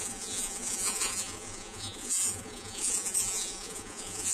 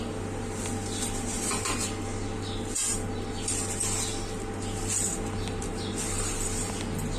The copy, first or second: first